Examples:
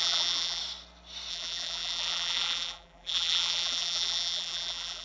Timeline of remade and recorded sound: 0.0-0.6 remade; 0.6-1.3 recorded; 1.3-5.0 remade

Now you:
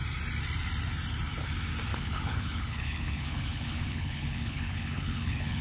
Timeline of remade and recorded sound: 0.0-1.9 recorded; 1.9-5.6 remade